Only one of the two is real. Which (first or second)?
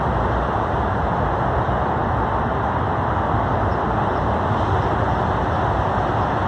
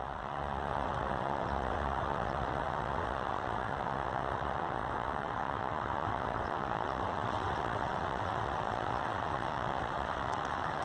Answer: first